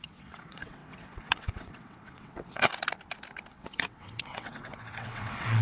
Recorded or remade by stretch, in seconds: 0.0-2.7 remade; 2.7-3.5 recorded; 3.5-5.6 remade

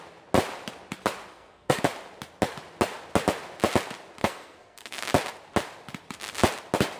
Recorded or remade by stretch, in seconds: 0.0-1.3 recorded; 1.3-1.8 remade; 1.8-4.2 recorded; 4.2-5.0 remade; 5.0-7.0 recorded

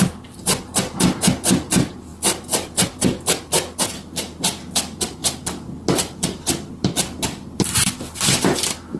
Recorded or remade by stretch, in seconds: 0.0-9.0 remade